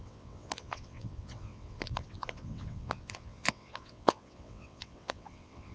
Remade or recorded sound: remade